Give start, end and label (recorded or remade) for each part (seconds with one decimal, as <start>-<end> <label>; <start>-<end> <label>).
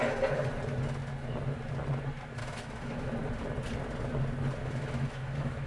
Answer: 0.0-2.4 recorded; 2.4-3.1 remade; 3.1-4.6 recorded; 4.6-5.7 remade